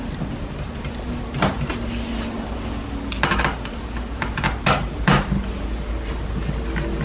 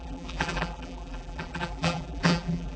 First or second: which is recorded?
first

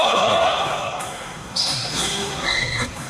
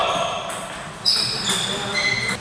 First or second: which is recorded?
second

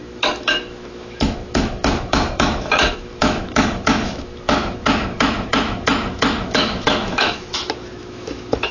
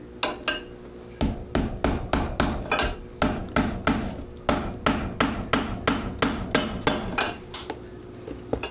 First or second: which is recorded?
second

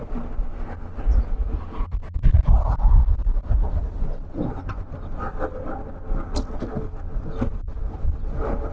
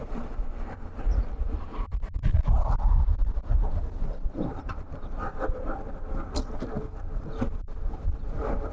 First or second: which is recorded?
first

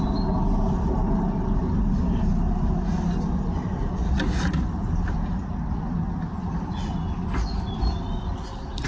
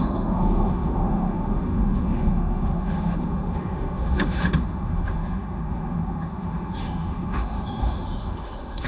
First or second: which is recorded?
first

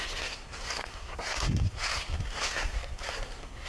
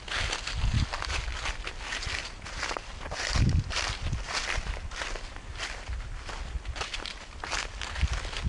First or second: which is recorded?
second